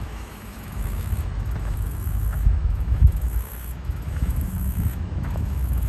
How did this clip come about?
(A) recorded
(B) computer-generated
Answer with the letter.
B